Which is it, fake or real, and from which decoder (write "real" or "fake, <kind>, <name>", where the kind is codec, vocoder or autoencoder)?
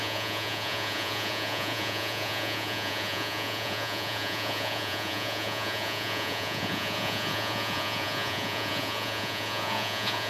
fake, vocoder, Vocos